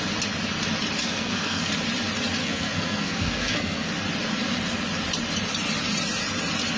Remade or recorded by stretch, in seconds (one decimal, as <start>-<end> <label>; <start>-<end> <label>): 0.0-1.0 recorded; 1.0-1.7 remade; 1.7-2.4 recorded; 2.4-3.9 remade; 3.9-6.8 recorded